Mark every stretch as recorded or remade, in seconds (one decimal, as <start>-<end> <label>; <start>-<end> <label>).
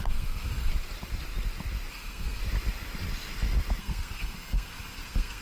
0.0-0.7 remade; 0.7-1.9 recorded; 1.9-2.4 remade; 2.4-3.8 recorded; 3.8-5.4 remade